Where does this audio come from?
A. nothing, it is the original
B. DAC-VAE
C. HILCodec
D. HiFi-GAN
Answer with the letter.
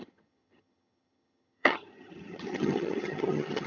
D